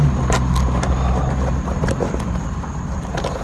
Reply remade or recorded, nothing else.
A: recorded